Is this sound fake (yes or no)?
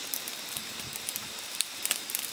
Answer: yes